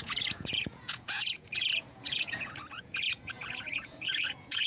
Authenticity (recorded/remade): remade